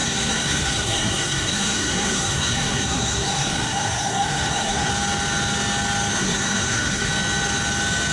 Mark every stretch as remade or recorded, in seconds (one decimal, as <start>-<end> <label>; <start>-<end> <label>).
0.0-4.9 remade; 4.9-6.2 recorded; 6.2-7.1 remade; 7.1-8.1 recorded